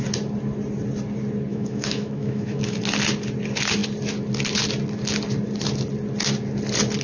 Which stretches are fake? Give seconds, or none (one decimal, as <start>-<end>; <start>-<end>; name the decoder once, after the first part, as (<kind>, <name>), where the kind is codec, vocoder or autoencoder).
1.5-2.8 (autoencoder, DAC-VAE)